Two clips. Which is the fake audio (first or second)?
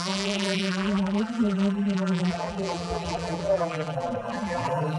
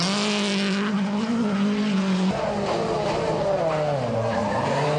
first